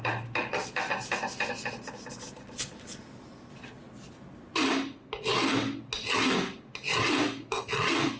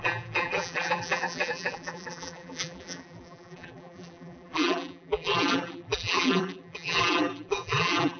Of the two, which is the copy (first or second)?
second